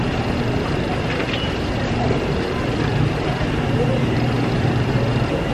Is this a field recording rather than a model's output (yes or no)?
no